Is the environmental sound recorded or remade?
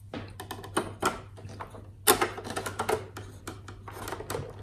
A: recorded